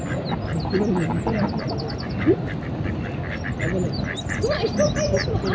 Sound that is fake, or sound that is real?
real